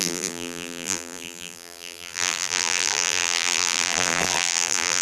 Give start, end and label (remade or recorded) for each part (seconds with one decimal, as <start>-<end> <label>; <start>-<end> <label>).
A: 0.0-5.0 remade